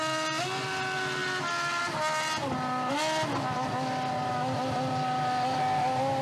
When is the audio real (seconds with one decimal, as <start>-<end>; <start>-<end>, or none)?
0.0-6.2